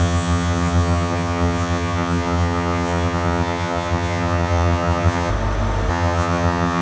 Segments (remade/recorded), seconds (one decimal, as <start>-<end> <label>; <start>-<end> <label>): 0.0-5.3 remade; 5.3-5.9 recorded; 5.9-6.8 remade